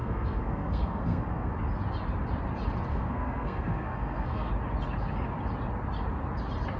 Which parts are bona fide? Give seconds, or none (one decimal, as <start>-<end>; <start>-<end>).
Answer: 1.5-2.9; 4.5-6.8